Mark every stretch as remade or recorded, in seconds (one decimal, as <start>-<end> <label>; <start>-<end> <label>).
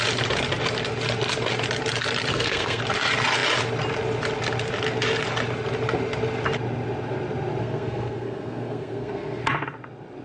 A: 0.0-2.3 recorded; 2.3-2.8 remade; 2.8-7.6 recorded; 7.6-9.4 remade; 9.4-10.2 recorded